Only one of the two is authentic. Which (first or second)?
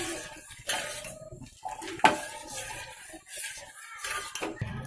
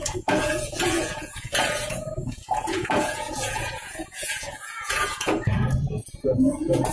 first